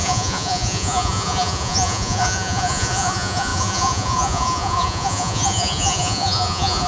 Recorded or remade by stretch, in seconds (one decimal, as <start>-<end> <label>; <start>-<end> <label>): 0.0-6.9 remade

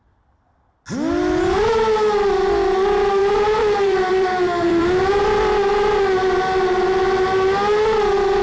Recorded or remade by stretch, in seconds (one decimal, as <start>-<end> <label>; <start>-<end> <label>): 0.0-3.2 recorded; 3.2-5.1 remade; 5.1-8.4 recorded

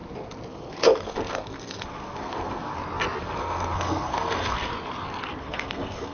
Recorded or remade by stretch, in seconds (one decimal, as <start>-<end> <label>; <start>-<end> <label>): 0.0-0.5 recorded; 0.5-2.7 remade; 2.7-3.2 recorded; 3.2-4.7 remade; 4.7-5.4 recorded; 5.4-6.1 remade

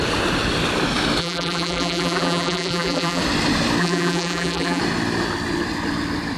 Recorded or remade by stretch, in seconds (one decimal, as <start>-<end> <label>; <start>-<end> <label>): 0.0-1.2 recorded; 1.2-3.2 remade; 3.2-3.8 recorded; 3.8-4.8 remade; 4.8-6.4 recorded

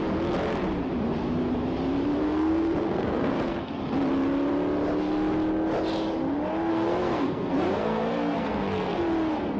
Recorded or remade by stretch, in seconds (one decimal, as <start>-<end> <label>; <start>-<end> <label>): 0.0-2.2 recorded; 2.2-3.8 remade; 3.8-6.7 recorded; 6.7-9.0 remade; 9.0-9.6 recorded

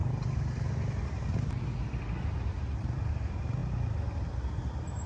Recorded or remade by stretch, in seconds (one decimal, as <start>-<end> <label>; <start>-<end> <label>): 0.0-5.1 recorded

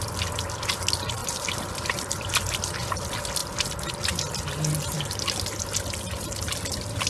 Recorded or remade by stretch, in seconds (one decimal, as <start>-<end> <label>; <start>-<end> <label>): 0.0-7.1 recorded